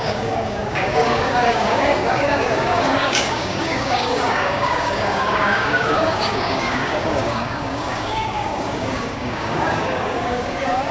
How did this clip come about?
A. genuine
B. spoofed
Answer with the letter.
B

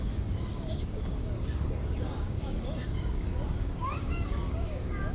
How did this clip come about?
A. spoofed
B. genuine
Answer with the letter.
A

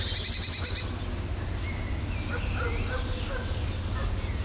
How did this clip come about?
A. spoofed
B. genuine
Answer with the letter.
B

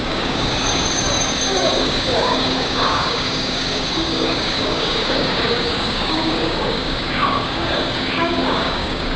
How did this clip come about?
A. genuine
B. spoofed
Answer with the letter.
B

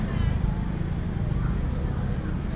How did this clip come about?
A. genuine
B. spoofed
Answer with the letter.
A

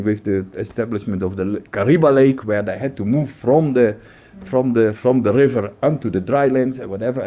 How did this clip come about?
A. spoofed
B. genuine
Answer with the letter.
A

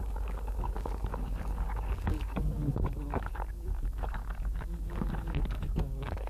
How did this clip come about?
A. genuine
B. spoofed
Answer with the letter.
B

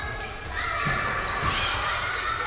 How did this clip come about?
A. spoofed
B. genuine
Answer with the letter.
B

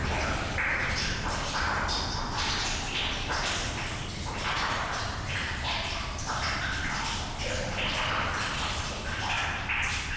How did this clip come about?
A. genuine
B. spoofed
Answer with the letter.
A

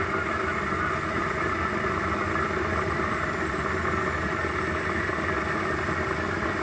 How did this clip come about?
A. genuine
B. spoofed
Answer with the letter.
A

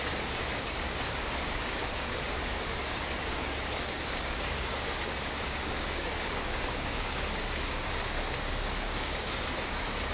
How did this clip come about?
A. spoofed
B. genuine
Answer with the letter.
A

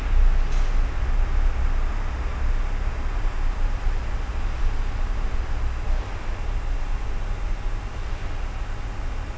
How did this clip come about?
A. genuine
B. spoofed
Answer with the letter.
A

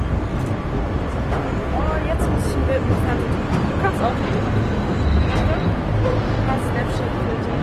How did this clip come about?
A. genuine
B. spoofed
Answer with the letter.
A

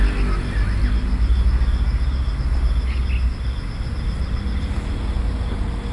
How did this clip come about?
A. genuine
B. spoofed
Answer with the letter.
A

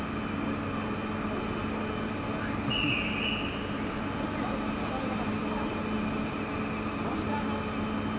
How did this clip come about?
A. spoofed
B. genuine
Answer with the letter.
B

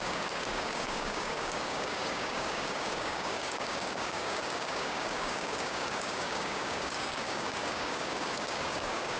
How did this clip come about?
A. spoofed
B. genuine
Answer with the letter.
A